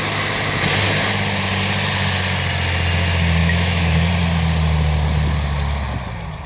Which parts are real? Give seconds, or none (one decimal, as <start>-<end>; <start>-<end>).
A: 0.0-3.4; 4.1-6.5